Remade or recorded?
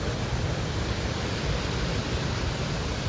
recorded